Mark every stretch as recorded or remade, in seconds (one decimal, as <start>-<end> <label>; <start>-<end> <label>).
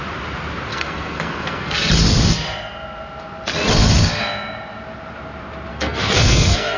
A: 0.0-0.7 recorded; 0.7-1.9 remade; 1.9-5.7 recorded; 5.7-6.8 remade